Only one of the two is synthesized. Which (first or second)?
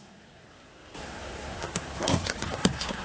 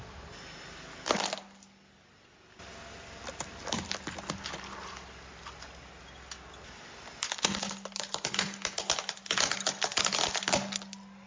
first